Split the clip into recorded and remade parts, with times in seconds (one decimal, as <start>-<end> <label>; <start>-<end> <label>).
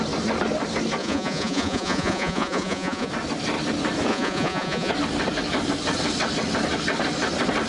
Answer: 0.0-1.0 recorded; 1.0-3.1 remade; 3.1-4.1 recorded; 4.1-4.9 remade; 4.9-7.7 recorded